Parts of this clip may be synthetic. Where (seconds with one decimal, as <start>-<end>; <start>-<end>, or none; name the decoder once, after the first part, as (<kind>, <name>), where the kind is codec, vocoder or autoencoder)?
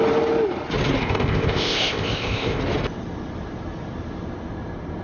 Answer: 1.0-2.6 (codec, ZipCodec)